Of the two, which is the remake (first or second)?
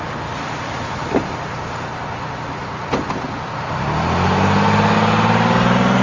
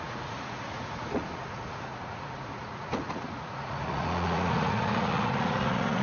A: second